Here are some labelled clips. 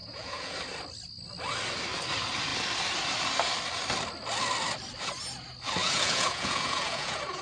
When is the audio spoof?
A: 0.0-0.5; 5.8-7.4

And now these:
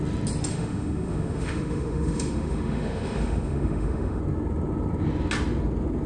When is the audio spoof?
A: 0.5-4.2

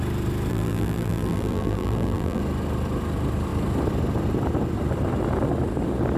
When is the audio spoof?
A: 0.5-2.4

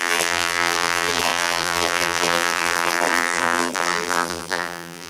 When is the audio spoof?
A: 0.0-5.1

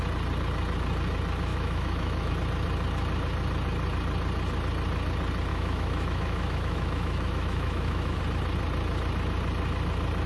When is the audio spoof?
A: 1.5-2.3; 5.5-8.2

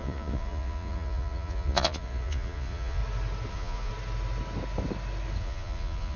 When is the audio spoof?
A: 0.0-3.0; 3.5-3.9; 5.4-6.2

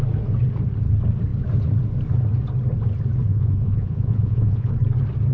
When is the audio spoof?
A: 3.3-4.7